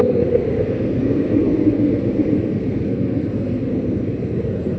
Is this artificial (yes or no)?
yes